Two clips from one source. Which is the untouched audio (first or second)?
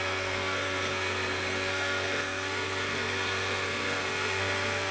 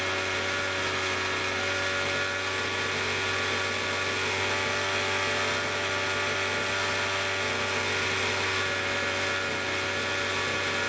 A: second